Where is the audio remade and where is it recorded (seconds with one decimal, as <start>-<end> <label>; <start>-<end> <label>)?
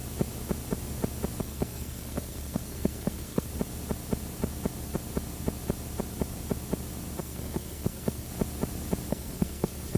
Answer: 0.0-1.4 recorded; 1.4-3.5 remade; 3.5-7.2 recorded; 7.2-8.3 remade; 8.3-9.1 recorded; 9.1-10.0 remade